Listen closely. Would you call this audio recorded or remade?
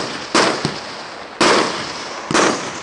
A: recorded